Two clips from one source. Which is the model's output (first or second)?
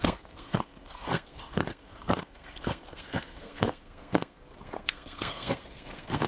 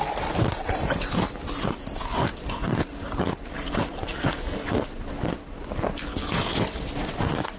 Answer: first